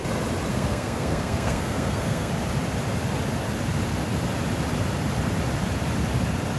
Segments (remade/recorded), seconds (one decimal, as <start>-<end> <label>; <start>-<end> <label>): 0.0-0.5 recorded; 0.5-2.3 remade; 2.3-6.6 recorded